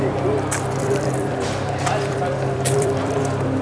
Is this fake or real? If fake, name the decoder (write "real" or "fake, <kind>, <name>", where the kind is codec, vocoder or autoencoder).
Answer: fake, vocoder, BigVGAN v2